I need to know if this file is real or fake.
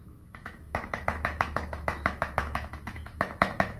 fake